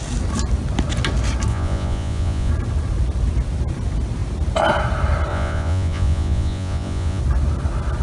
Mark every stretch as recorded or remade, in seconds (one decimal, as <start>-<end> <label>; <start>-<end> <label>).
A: 0.0-1.5 recorded; 1.5-2.5 remade; 2.5-5.3 recorded; 5.3-7.2 remade; 7.2-8.0 recorded